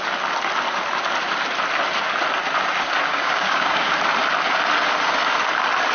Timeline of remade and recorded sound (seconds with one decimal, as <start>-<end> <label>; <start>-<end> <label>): 0.0-3.1 recorded; 3.1-3.9 remade; 3.9-5.9 recorded